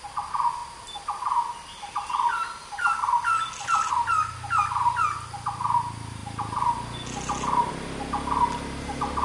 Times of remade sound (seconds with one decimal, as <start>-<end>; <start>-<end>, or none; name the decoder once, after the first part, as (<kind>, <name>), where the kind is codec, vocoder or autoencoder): none